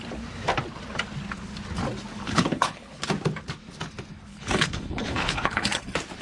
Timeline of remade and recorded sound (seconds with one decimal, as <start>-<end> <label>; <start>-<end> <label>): 0.0-2.2 recorded; 2.2-3.1 remade; 3.1-4.3 recorded; 4.3-5.8 remade; 5.8-6.2 recorded

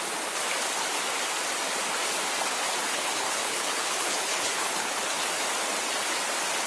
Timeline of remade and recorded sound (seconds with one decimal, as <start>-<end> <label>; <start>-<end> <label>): 0.0-2.9 recorded; 2.9-5.0 remade; 5.0-6.7 recorded

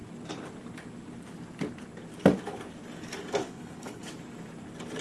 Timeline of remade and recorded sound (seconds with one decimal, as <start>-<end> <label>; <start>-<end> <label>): 0.0-3.4 recorded; 3.4-4.0 remade; 4.0-5.0 recorded

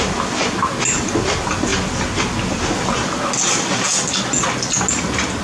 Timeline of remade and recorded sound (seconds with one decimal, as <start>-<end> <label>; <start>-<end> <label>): 0.0-5.4 recorded

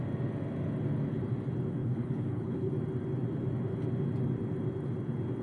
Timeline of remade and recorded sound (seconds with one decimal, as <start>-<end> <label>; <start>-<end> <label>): 0.0-1.8 recorded; 1.8-2.7 remade; 2.7-5.4 recorded

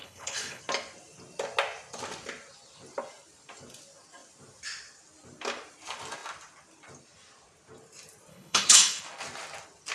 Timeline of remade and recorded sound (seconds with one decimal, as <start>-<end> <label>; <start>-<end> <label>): 0.0-0.6 remade; 0.6-8.3 recorded; 8.3-9.0 remade; 9.0-9.9 recorded

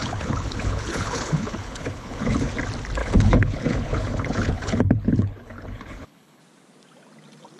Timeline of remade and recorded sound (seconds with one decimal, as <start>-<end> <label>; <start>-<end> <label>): 0.0-2.5 remade; 2.5-3.0 recorded; 3.0-6.4 remade; 6.4-7.6 recorded